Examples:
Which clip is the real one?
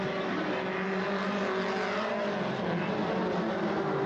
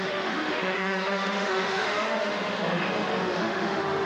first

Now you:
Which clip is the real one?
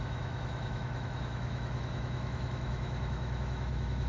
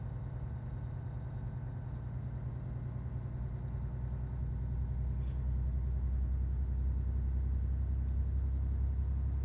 second